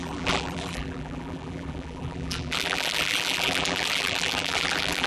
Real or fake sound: fake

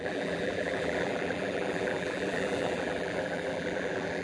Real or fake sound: fake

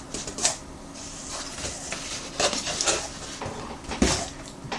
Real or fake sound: fake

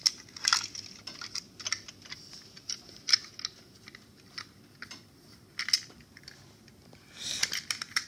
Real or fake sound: real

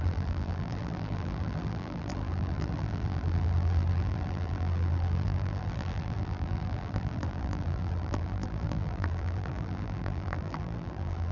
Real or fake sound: fake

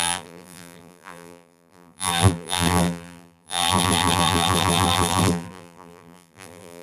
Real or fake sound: fake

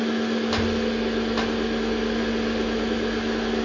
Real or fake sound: real